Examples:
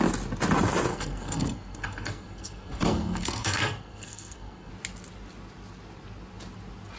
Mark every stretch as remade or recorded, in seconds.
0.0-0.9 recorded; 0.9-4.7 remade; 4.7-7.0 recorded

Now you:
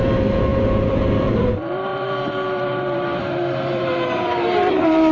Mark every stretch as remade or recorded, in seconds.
0.0-5.1 remade